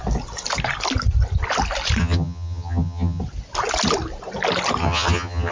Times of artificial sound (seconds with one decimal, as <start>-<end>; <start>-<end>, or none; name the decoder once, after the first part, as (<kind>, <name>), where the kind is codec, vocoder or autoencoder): 2.0-3.2 (vocoder, HiFi-GAN); 4.8-5.5